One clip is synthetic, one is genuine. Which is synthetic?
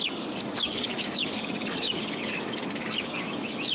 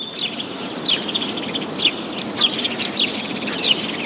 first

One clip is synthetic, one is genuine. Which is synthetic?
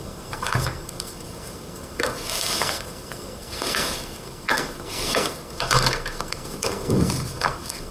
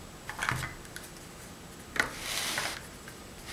first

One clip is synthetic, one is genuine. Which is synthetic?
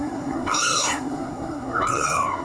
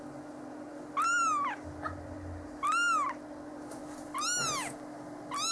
first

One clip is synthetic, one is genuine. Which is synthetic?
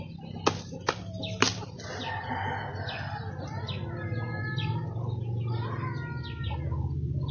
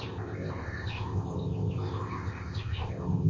second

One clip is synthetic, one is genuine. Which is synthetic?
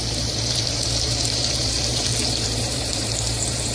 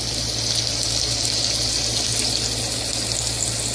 first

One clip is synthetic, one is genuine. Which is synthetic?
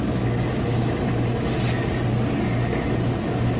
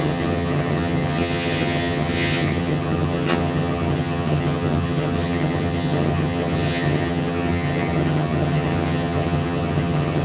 second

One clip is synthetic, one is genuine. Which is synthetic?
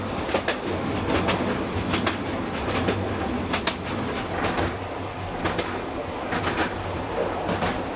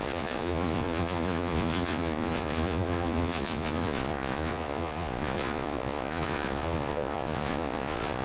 second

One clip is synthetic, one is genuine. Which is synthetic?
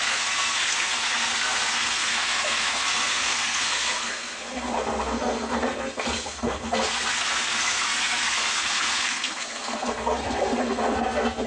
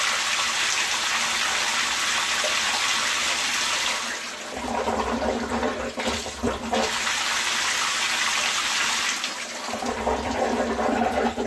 first